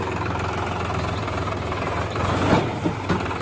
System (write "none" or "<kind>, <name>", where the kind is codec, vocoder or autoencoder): none